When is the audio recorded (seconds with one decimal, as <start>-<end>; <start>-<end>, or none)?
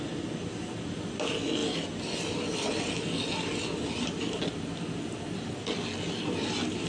0.0-6.9